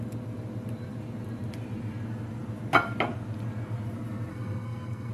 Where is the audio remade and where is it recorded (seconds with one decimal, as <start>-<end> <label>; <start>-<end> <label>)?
0.0-4.3 recorded; 4.3-5.1 remade